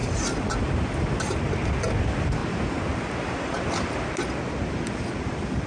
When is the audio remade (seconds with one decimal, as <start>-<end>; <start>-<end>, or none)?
none